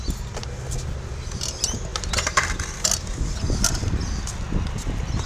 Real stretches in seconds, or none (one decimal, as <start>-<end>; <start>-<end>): 0.0-5.3